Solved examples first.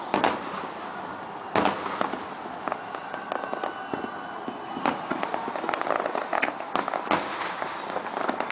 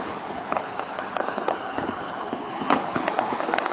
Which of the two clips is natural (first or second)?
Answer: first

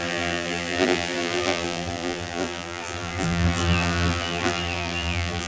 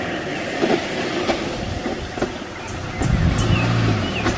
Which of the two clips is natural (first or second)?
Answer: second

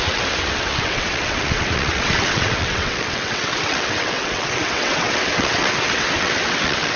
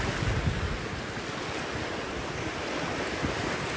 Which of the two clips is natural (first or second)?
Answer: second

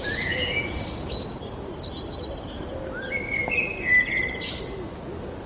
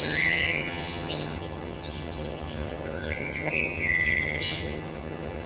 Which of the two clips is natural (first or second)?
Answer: first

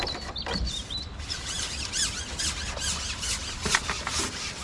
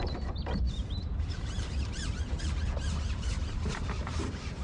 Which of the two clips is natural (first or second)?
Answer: first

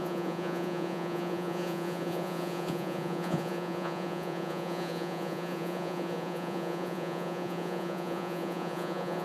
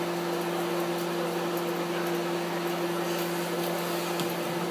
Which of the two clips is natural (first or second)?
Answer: second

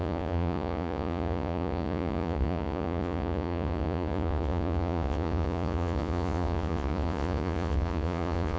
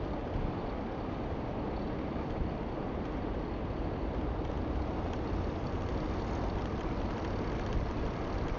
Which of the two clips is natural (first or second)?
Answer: second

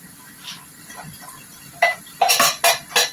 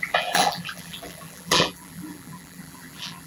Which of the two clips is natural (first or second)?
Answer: first